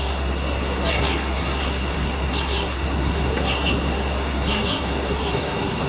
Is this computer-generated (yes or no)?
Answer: yes